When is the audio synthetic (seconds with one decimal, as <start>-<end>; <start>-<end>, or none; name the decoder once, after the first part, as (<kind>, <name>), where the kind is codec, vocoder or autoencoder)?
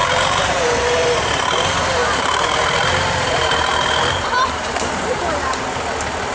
0.0-0.7 (vocoder, BigVGAN v2); 2.0-5.6